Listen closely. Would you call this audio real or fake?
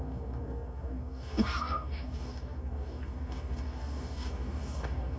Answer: fake